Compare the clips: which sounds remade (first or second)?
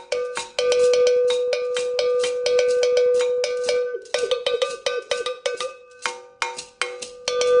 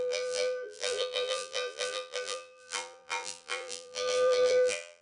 second